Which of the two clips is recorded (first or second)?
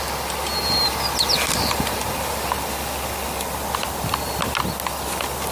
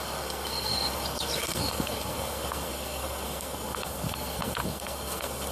first